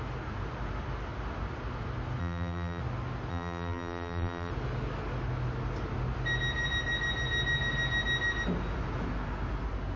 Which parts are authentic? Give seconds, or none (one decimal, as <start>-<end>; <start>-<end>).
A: 0.0-2.2; 2.8-3.3; 4.5-10.0